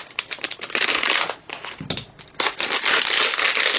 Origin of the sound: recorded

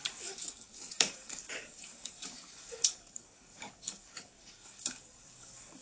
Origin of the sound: remade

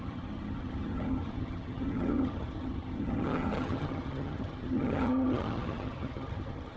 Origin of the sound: remade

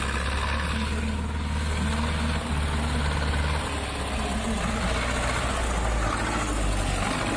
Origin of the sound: recorded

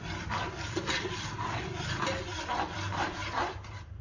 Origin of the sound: remade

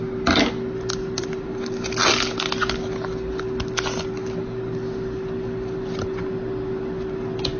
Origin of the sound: recorded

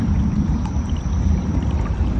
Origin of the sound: remade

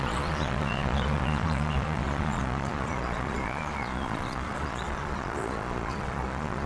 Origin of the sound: remade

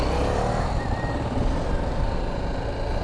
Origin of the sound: recorded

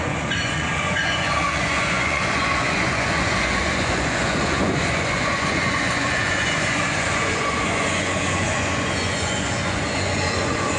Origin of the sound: remade